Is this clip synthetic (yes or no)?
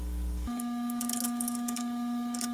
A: yes